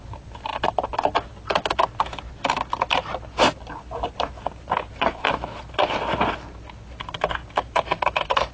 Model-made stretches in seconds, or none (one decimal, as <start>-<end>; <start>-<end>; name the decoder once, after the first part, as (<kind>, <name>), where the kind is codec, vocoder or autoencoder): none